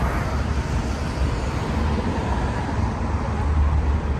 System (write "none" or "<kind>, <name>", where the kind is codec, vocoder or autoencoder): none